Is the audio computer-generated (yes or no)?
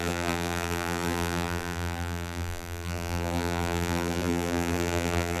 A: yes